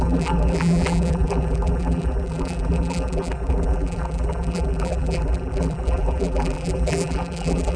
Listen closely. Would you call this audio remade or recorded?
remade